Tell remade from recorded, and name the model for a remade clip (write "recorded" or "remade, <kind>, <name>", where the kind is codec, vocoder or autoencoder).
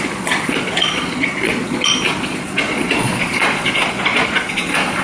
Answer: remade, vocoder, Vocos